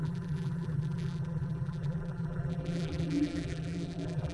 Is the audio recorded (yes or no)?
no